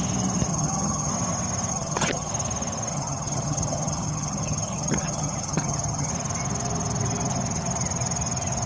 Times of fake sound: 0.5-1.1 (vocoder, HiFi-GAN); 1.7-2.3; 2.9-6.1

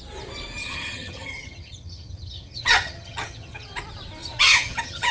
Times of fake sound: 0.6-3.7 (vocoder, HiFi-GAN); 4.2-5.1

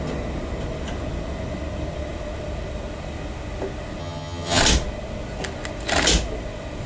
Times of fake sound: 4.0-4.6 (vocoder, HiFi-GAN)

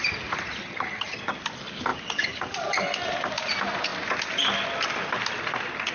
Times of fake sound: 0.6-1.2 (vocoder, HiFi-GAN)

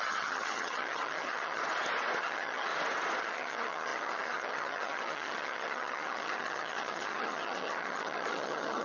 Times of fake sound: 0.0-1.6 (vocoder, HiFi-GAN); 2.2-2.7; 3.2-8.8

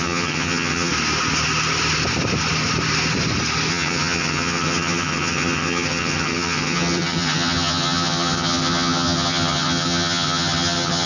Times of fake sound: 0.0-0.9 (vocoder, HiFi-GAN); 3.7-11.1

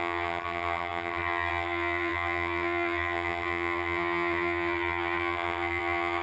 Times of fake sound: 0.0-6.2 (vocoder, HiFi-GAN)

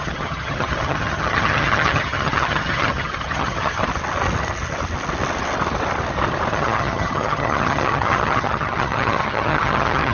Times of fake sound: 0.0-3.8 (vocoder, HiFi-GAN); 6.5-10.1